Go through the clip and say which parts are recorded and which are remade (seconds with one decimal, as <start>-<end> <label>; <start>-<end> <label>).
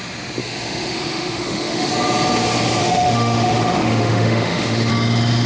0.0-0.4 recorded; 0.4-1.9 remade; 1.9-2.8 recorded; 2.8-4.9 remade; 4.9-5.5 recorded